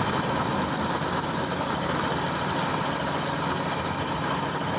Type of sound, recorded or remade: recorded